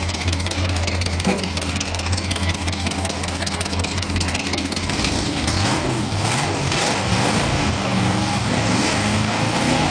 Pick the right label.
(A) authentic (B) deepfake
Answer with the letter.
B